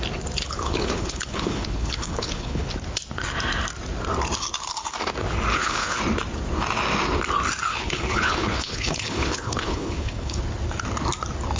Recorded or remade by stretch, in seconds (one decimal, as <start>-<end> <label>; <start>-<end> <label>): 0.0-0.4 recorded; 0.4-2.7 remade; 2.7-5.5 recorded; 5.5-6.0 remade; 6.0-7.7 recorded; 7.7-10.4 remade; 10.4-11.6 recorded